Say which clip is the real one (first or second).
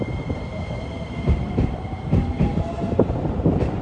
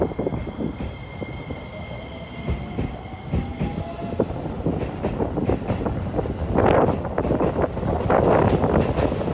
second